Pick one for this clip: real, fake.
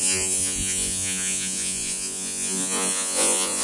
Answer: fake